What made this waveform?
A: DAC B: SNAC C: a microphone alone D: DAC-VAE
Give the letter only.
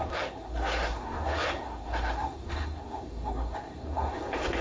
B